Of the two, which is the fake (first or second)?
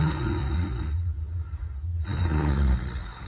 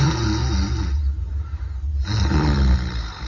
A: first